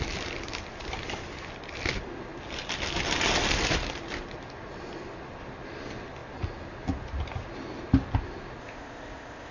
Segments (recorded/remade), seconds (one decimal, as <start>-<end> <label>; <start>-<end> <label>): 0.0-8.6 recorded; 8.6-9.5 remade